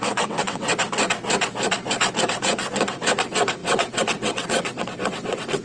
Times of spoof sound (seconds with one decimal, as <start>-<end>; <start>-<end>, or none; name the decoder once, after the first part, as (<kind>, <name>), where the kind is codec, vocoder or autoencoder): 0.0-0.7 (vocoder, WaveNeXt); 2.3-5.6